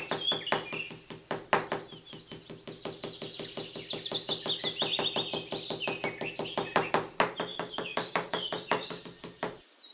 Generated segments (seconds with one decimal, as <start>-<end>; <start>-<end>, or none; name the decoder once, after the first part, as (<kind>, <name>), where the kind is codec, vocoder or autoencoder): 7.5-9.0 (codec, DAC)